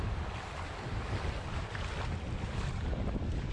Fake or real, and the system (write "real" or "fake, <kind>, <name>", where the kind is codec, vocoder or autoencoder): real